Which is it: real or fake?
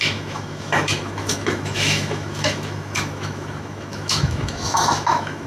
fake